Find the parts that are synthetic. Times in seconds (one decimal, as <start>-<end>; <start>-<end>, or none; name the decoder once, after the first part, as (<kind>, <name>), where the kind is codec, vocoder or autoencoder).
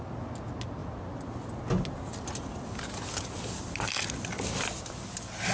none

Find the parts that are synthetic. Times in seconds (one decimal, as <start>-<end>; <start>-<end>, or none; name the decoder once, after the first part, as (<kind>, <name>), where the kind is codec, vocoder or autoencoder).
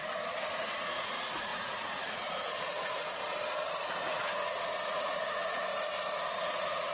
0.5-3.2 (vocoder, Vocos); 3.8-5.7; 6.3-6.9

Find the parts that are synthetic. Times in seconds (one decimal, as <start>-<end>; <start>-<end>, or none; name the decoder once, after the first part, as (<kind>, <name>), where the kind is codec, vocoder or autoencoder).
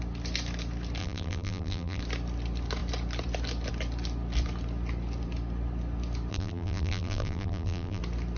1.0-2.0 (vocoder, BigVGAN v2); 6.3-8.0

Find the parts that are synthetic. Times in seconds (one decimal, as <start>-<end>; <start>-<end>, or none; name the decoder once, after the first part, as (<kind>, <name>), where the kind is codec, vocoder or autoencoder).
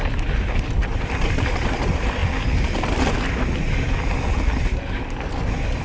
0.0-2.2 (vocoder, BigVGAN v2)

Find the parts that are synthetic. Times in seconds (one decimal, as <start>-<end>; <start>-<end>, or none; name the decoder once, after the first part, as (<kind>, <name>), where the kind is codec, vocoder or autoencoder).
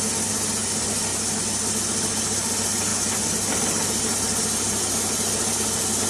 none